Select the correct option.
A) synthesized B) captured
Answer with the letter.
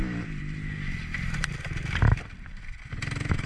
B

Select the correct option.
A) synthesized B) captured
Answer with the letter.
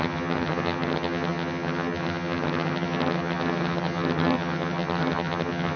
A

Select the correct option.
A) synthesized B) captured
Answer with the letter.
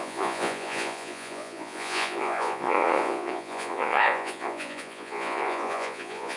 A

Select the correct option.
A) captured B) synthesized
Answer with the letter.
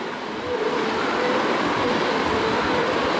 A